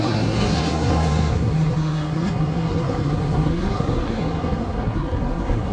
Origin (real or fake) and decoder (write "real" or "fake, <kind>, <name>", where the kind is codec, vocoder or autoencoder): fake, codec, SNAC